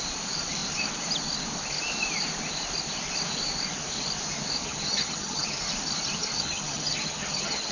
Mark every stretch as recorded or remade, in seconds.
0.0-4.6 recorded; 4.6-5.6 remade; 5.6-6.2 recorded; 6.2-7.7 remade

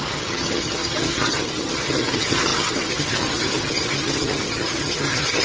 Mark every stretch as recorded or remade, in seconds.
0.0-5.4 remade

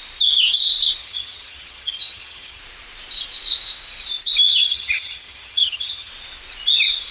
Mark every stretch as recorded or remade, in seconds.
0.0-1.0 recorded; 1.0-2.6 remade; 2.6-4.5 recorded; 4.5-6.1 remade; 6.1-7.1 recorded

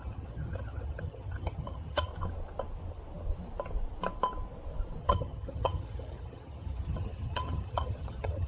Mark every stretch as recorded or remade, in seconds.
0.0-2.1 remade; 2.1-5.0 recorded; 5.0-8.5 remade

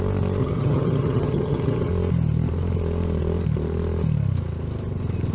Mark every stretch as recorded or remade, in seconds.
0.0-0.4 recorded; 0.4-1.9 remade; 1.9-5.3 recorded